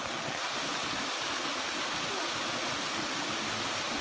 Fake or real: real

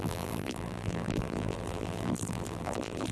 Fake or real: fake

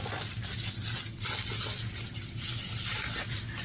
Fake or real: real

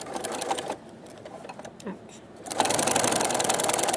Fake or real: real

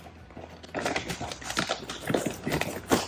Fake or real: real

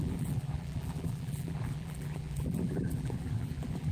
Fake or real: fake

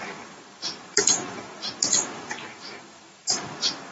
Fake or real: fake